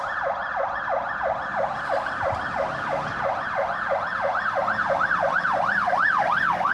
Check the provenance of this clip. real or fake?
real